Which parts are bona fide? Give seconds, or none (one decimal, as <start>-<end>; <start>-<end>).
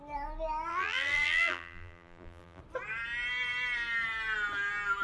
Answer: 0.0-0.7; 2.6-5.0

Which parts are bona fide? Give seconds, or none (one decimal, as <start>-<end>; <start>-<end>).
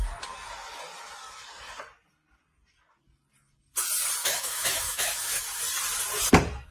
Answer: 0.0-4.2; 5.6-6.7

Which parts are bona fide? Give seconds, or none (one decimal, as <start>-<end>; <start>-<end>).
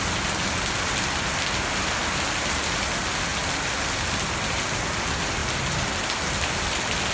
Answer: 0.0-7.1